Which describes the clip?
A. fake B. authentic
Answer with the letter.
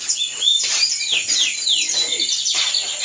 B